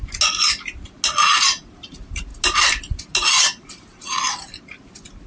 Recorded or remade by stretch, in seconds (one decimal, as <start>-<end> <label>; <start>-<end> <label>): 0.0-5.3 recorded